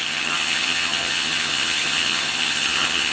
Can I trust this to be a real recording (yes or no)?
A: no